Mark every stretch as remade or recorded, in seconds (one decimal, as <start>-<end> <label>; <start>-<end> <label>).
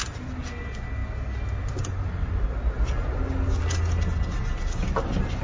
0.0-5.4 recorded